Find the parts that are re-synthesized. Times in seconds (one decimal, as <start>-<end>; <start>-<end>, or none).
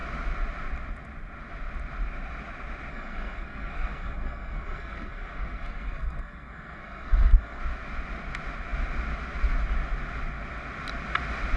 2.9-7.6